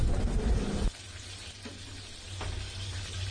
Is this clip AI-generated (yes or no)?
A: no